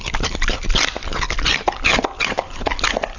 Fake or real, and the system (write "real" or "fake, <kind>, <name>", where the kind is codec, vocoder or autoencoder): real